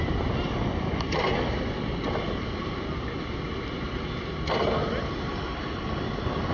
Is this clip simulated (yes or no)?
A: no